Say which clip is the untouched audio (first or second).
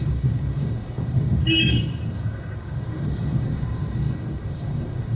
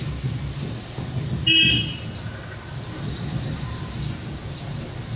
second